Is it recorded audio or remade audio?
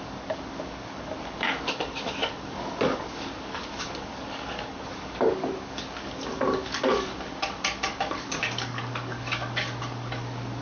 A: remade